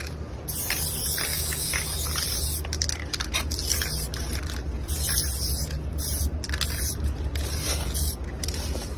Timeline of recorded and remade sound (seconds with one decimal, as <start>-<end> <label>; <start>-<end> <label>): 0.0-1.3 recorded; 1.3-2.1 remade; 2.1-9.0 recorded